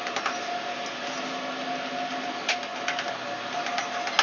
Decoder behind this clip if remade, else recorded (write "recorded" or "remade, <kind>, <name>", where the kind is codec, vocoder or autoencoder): recorded